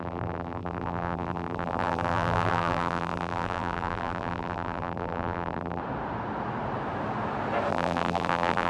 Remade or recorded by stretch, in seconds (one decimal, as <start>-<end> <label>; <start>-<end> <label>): 0.0-5.8 remade; 5.8-7.7 recorded; 7.7-8.7 remade